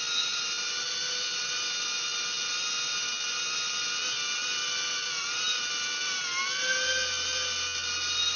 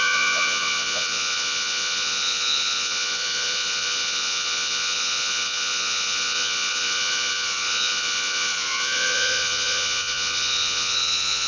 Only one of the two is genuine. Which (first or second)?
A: first